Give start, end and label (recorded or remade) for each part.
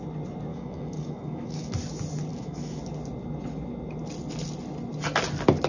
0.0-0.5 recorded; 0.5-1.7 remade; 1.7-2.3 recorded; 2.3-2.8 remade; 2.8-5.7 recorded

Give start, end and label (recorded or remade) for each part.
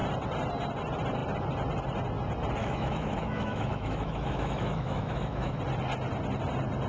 0.0-2.6 recorded; 2.6-5.6 remade; 5.6-6.9 recorded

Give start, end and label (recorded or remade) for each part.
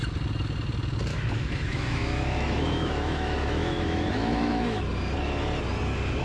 0.0-1.1 recorded; 1.1-4.8 remade; 4.8-6.2 recorded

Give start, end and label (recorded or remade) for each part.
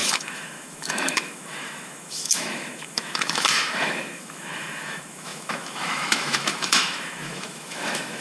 0.0-8.2 remade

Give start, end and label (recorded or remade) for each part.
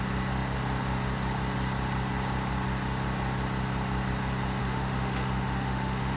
0.0-4.6 recorded; 4.6-6.2 remade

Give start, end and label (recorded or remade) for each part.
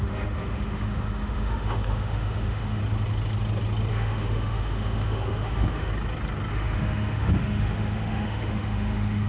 0.0-2.8 remade; 2.8-3.9 recorded; 3.9-5.9 remade; 5.9-6.5 recorded; 6.5-9.3 remade